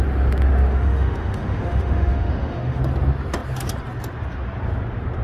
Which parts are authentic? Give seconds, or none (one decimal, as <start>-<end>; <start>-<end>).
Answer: 0.0-0.7; 2.8-5.2